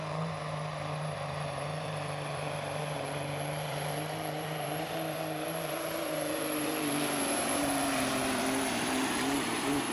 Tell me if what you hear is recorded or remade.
remade